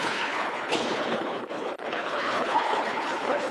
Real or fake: fake